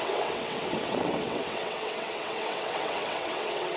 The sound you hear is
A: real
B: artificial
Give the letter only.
B